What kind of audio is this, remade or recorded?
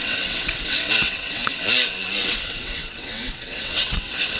remade